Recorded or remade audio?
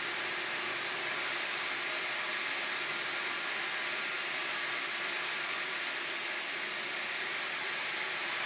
recorded